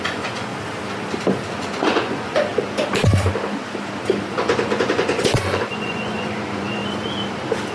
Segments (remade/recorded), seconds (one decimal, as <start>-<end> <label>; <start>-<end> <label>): 0.0-0.5 remade; 0.5-1.5 recorded; 1.5-2.5 remade; 2.5-4.3 recorded; 4.3-6.8 remade; 6.8-7.7 recorded